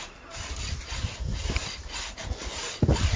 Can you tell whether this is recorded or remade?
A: recorded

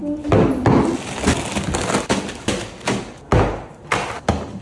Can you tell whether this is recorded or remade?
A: recorded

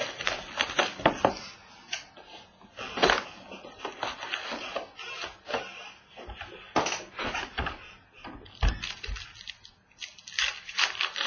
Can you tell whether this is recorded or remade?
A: recorded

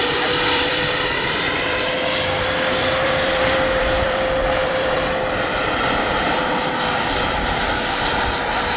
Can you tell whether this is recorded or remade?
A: remade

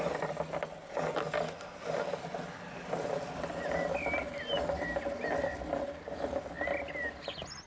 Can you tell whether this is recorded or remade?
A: recorded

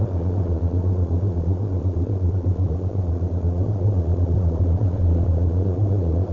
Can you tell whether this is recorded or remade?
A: remade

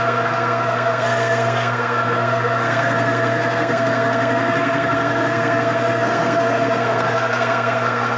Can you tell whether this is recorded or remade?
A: remade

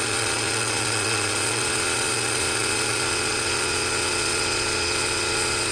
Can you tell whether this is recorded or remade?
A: remade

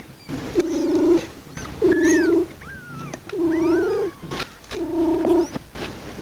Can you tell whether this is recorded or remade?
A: recorded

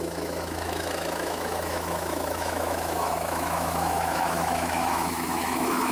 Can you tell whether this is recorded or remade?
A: remade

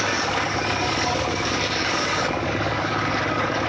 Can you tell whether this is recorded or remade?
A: remade